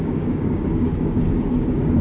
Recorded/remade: remade